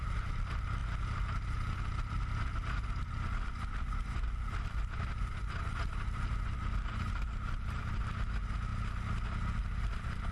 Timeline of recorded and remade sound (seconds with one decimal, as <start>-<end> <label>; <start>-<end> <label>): 0.0-8.7 remade; 8.7-9.6 recorded; 9.6-10.3 remade